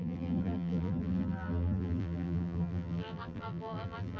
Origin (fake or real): fake